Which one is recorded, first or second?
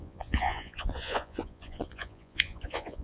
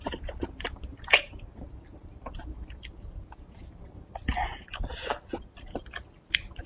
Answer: second